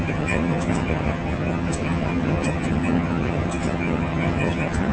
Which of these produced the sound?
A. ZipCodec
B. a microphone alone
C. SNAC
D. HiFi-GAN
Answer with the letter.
D